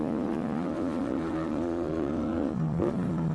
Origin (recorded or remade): remade